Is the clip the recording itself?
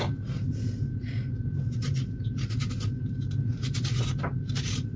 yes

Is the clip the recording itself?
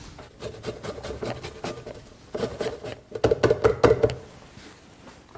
yes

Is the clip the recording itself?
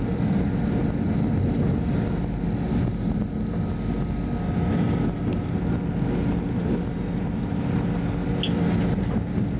yes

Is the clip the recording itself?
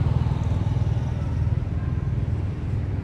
yes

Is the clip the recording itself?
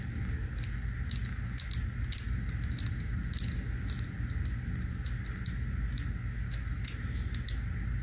yes